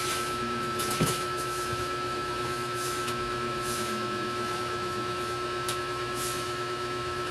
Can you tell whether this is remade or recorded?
remade